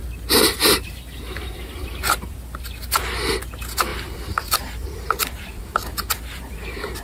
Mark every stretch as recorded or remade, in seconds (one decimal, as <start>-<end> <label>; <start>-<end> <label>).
0.0-3.9 recorded; 3.9-7.0 remade